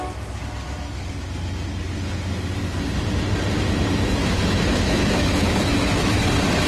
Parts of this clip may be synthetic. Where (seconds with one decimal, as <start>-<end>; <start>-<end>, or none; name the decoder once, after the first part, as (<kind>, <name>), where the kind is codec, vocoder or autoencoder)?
4.2-6.2 (autoencoder, DAC-VAE)